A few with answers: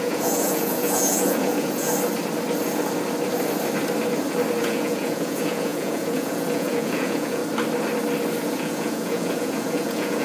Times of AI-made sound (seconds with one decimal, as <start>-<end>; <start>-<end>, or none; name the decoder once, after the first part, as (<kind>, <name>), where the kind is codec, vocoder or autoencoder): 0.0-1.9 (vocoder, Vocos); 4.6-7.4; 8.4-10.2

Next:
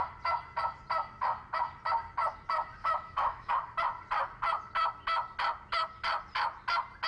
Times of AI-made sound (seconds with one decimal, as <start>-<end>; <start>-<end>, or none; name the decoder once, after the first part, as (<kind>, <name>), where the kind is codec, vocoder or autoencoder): 2.8-3.5 (autoencoder, DAC-VAE)

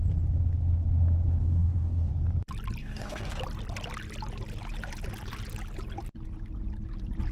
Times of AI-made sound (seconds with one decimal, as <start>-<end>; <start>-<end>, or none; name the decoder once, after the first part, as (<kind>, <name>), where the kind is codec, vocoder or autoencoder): 1.4-2.1 (codec, DAC); 2.8-3.4

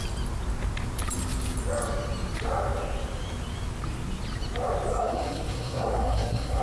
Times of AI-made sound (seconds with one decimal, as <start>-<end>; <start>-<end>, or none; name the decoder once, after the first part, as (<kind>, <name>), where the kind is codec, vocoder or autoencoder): 4.9-6.6 (codec, SNAC)

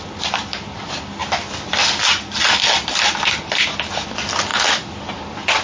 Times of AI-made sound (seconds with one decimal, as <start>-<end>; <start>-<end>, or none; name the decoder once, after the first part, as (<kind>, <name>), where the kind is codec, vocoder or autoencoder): none

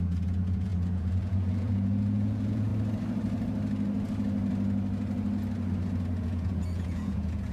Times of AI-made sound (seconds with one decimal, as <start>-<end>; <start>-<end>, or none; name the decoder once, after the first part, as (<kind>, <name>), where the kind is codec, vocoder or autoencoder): 0.0-2.7 (vocoder, Vocos); 6.2-7.5

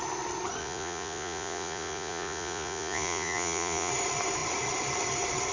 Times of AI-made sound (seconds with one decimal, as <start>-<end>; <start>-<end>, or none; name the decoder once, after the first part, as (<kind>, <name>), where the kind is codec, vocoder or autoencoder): 0.6-3.9 (vocoder, Vocos)

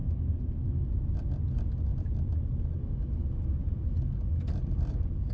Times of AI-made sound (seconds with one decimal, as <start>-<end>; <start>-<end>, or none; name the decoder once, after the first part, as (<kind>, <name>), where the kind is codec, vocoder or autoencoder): none